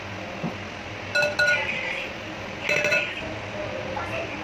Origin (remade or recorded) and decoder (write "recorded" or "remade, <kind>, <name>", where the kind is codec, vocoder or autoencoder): recorded